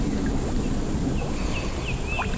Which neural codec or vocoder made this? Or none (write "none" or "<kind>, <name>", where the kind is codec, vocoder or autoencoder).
none